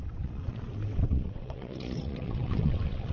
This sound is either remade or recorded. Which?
remade